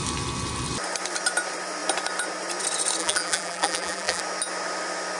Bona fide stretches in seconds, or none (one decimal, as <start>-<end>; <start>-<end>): 0.0-3.0; 4.2-5.2